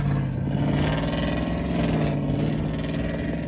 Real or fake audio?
real